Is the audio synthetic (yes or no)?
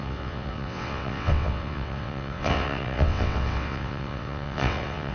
yes